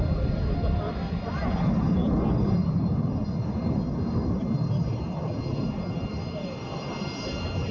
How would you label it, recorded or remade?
recorded